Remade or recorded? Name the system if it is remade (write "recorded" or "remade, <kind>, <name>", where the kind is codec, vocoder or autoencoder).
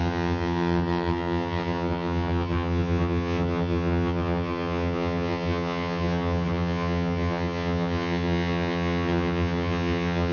remade, vocoder, HiFi-GAN